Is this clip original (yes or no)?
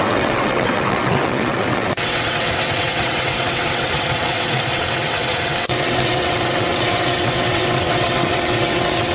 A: no